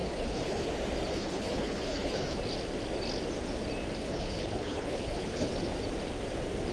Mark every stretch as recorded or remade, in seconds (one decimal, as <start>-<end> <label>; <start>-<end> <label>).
0.0-0.7 remade; 0.7-1.1 recorded; 1.1-2.4 remade; 2.4-4.0 recorded; 4.0-5.5 remade; 5.5-6.7 recorded